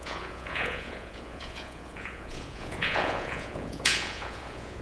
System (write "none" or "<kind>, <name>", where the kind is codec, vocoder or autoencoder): vocoder, Vocos